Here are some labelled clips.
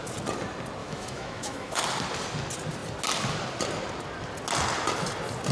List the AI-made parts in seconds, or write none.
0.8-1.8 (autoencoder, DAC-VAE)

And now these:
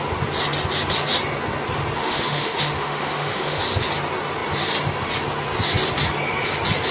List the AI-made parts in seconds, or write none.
2.0-3.6 (autoencoder, DAC-VAE)

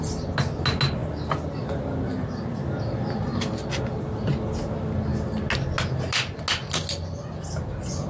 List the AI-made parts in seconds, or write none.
none

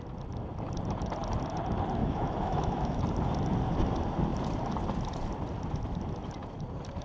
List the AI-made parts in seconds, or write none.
2.0-3.0 (autoencoder, DAC-VAE)

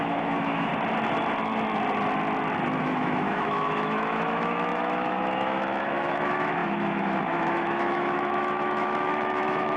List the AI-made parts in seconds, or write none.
0.0-0.7 (autoencoder, DAC-VAE); 2.8-9.8